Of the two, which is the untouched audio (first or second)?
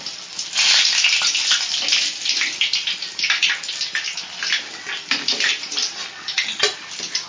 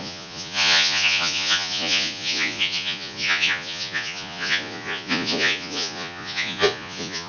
first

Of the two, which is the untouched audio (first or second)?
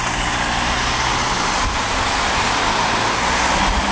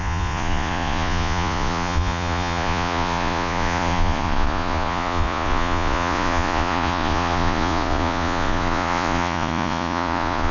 first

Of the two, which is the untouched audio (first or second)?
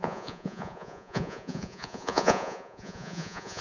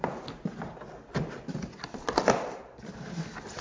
second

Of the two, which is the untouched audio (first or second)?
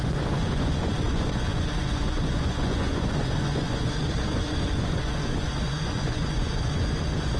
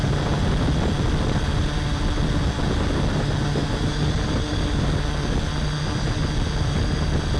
second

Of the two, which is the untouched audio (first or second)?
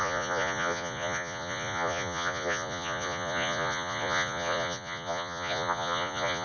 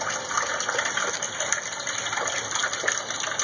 second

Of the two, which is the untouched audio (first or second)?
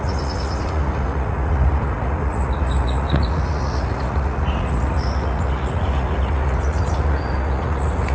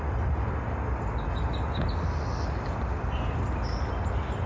second